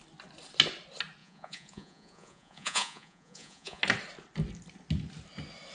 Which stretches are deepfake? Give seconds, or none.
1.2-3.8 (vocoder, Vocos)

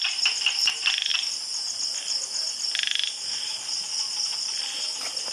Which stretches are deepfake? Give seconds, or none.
none